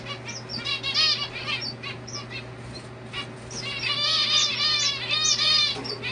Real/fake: real